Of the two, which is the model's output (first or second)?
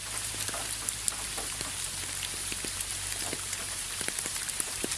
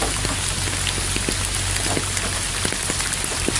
first